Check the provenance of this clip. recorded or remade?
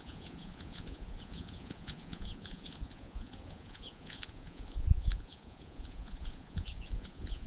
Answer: remade